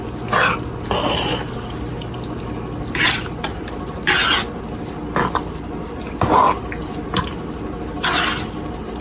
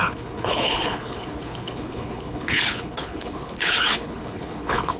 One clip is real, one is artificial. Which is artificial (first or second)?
second